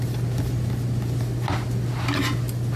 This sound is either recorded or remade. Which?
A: recorded